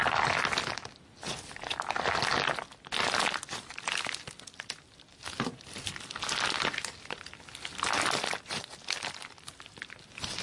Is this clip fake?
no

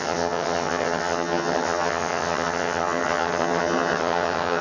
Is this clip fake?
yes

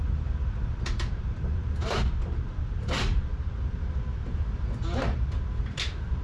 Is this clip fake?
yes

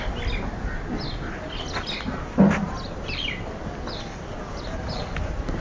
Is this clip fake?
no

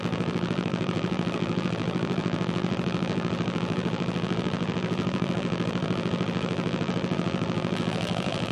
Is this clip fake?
yes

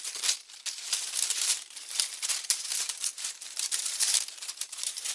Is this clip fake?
yes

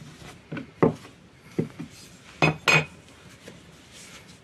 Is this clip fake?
no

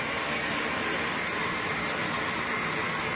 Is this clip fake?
no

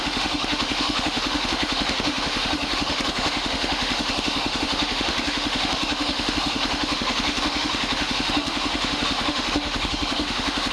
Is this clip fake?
yes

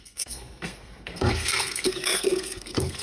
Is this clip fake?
yes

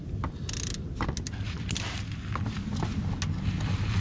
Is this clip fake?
no